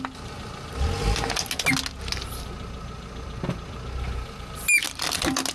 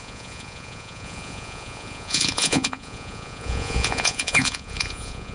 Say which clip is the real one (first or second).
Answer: first